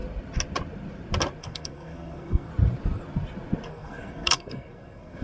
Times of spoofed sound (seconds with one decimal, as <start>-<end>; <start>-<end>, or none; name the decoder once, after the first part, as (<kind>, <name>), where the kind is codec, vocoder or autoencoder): 1.4-2.5 (codec, SNAC); 3.7-5.2